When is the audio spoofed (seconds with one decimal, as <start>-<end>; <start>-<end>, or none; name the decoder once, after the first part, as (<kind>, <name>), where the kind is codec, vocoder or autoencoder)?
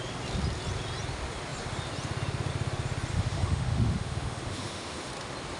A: 3.1-5.1 (autoencoder, DAC-VAE)